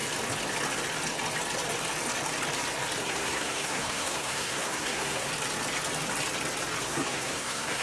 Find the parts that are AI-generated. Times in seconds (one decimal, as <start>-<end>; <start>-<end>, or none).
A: 3.0-5.3; 6.8-7.8